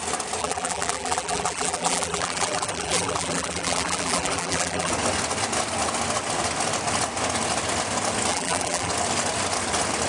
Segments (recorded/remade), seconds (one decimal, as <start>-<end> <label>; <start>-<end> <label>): 0.0-0.4 recorded; 0.4-4.9 remade; 4.9-8.3 recorded; 8.3-8.9 remade; 8.9-10.1 recorded